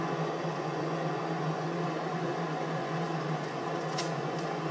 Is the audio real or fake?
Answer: fake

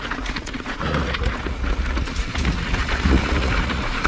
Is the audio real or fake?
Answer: fake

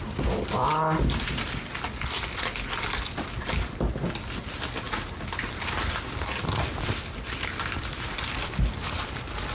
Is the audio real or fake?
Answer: real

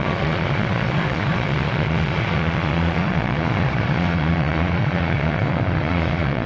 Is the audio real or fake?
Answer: fake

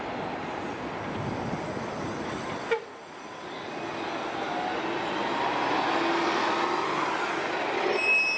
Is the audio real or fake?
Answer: real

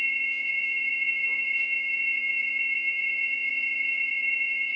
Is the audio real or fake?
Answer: fake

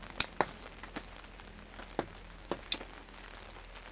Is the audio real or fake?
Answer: real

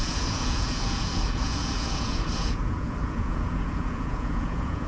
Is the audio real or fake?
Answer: fake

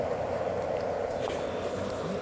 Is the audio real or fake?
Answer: real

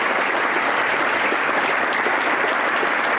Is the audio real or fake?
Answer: real